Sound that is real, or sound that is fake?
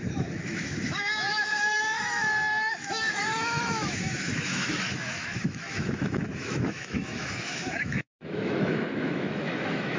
fake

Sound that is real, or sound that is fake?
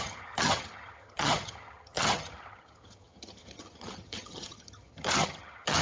fake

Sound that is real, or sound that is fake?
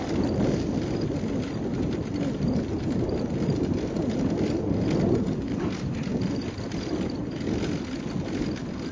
real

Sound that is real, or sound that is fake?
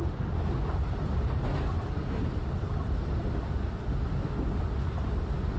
real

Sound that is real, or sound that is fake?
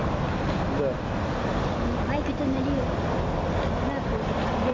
real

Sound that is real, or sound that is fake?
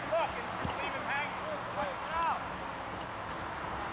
real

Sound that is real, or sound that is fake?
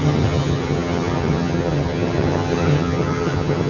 fake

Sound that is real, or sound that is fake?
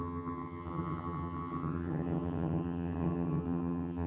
fake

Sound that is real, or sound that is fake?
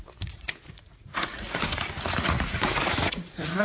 fake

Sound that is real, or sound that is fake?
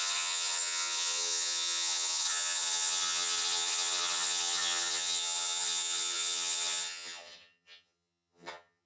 fake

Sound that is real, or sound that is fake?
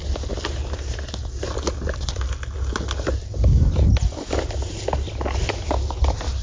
real